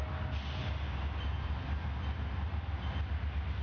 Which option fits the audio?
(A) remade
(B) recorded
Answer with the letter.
B